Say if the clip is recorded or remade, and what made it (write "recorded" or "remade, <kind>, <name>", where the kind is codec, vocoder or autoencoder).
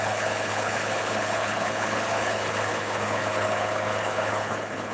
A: remade, codec, HILCodec